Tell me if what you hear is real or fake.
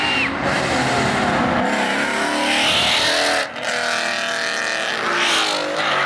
real